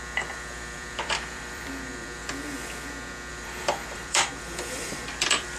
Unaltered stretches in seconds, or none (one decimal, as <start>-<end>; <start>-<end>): 2.2-3.3